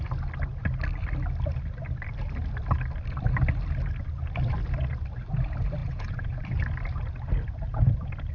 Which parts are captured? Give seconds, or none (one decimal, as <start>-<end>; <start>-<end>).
0.0-5.8; 6.4-8.3